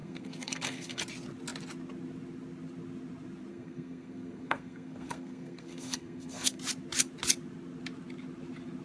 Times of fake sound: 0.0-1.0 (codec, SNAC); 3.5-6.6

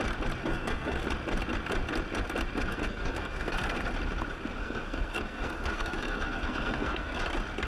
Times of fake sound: 0.4-1.0 (codec, SNAC); 2.7-3.9; 4.6-7.2

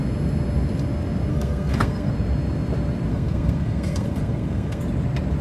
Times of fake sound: 1.3-2.1 (codec, SNAC); 3.1-4.8

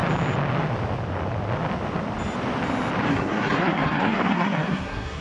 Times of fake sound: 3.1-5.2 (codec, SNAC)

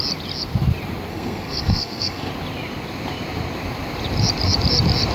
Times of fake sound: 1.1-2.3 (codec, SNAC)

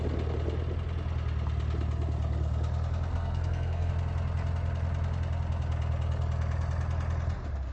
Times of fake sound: 3.1-3.9 (codec, SNAC)

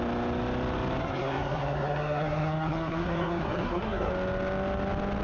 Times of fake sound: 1.0-4.1 (codec, SNAC)

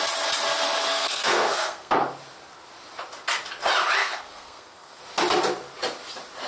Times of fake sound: 0.9-1.9 (codec, SNAC); 4.0-5.0